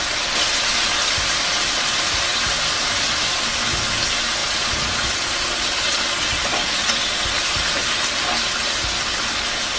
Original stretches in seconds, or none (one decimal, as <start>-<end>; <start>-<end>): 0.0-4.4; 6.9-9.8